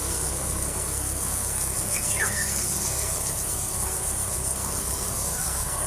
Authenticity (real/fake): fake